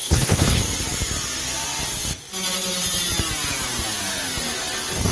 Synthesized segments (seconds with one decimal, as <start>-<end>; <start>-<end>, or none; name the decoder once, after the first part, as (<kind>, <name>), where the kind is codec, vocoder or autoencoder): 0.0-0.6 (codec, HILCodec)